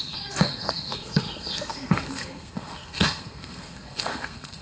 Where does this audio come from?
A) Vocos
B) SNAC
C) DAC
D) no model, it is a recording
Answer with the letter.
B